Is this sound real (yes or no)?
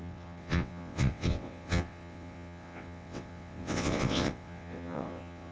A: no